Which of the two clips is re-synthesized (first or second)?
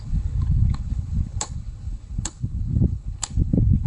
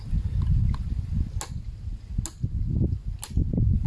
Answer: first